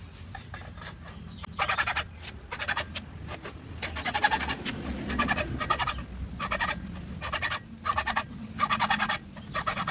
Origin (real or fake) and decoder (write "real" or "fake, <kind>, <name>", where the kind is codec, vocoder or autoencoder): real